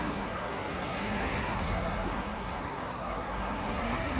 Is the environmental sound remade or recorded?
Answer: remade